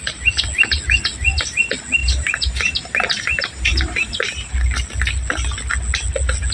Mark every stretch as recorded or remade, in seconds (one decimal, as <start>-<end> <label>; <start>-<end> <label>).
0.0-2.0 recorded; 2.0-4.5 remade; 4.5-6.5 recorded

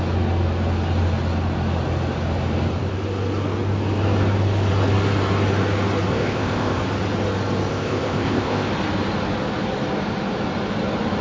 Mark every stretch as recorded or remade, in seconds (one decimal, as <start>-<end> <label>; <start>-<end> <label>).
0.0-6.1 recorded; 6.1-6.8 remade; 6.8-7.7 recorded; 7.7-8.7 remade; 8.7-11.2 recorded

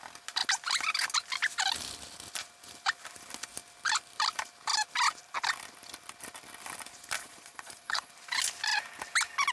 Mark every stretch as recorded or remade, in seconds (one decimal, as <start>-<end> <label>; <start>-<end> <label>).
0.0-7.2 recorded; 7.2-8.1 remade; 8.1-9.5 recorded